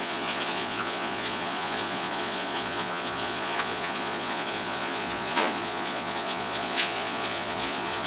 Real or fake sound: fake